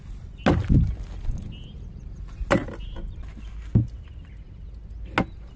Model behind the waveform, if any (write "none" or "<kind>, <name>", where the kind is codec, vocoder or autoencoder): none